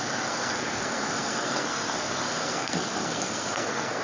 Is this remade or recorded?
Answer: remade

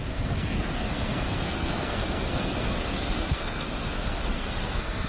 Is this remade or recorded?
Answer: remade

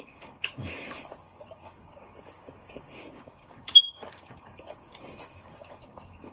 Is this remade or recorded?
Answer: remade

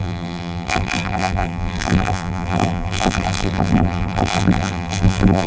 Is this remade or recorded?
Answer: remade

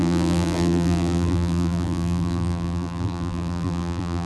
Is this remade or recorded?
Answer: remade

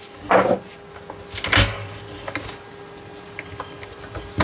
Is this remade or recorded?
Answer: recorded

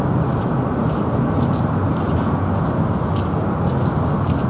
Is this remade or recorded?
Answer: recorded